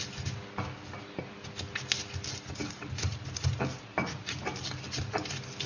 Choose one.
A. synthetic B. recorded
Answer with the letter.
B